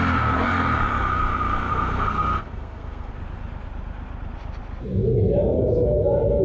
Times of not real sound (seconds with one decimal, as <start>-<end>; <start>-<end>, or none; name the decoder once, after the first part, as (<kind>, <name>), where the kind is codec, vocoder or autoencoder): 1.7-3.1 (codec, SNAC)